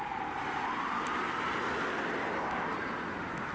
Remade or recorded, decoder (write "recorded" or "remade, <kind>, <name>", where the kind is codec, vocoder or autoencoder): recorded